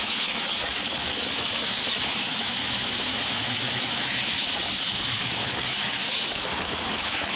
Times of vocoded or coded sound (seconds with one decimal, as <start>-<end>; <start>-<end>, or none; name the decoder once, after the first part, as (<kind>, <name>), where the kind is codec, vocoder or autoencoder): 0.0-7.4 (autoencoder, DAC-VAE)